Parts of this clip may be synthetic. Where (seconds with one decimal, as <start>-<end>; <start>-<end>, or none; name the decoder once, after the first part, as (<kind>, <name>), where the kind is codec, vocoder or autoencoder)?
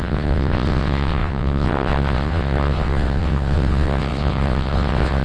0.0-5.2 (vocoder, WaveNeXt)